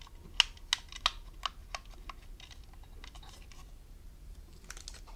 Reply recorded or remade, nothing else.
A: recorded